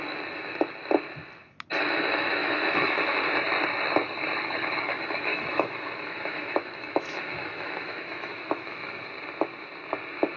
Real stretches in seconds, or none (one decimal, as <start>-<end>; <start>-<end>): 0.0-2.4; 3.2-5.3; 9.1-10.4